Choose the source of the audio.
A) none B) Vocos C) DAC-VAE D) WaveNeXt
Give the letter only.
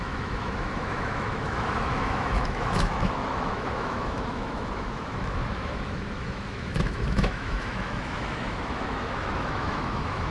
C